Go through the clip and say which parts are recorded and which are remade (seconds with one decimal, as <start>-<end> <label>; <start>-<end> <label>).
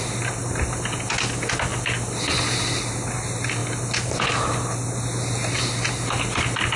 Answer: 0.0-6.8 recorded